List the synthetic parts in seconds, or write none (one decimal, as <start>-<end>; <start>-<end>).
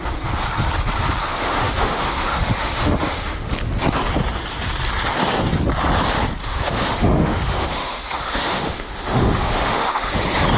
1.3-3.5; 6.4-10.2